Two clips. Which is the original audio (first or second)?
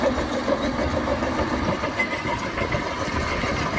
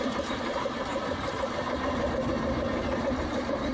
first